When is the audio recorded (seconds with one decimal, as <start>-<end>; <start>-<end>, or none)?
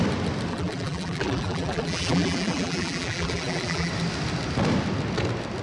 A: 0.0-0.5; 3.9-5.6